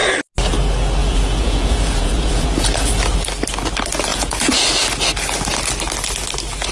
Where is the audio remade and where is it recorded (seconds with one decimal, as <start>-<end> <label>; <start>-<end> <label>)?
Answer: 0.0-1.0 recorded; 1.0-2.9 remade; 2.9-4.1 recorded; 4.1-4.6 remade; 4.6-6.7 recorded